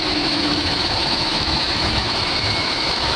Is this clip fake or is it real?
fake